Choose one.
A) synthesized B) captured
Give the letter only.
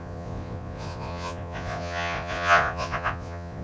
A